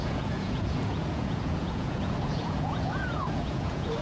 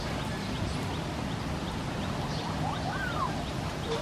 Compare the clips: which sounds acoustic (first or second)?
second